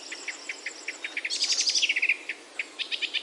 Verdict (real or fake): real